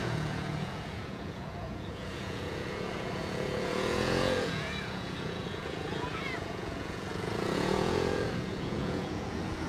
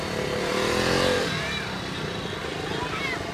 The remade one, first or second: first